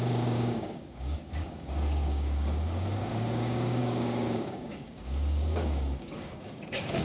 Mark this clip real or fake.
fake